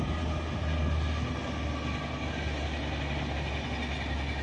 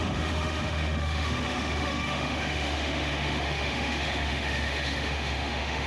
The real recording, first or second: first